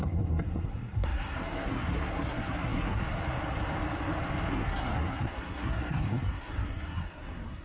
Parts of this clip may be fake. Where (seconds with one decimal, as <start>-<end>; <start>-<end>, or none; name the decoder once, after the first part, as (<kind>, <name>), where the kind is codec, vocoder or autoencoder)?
0.0-3.0 (codec, SNAC); 4.5-7.6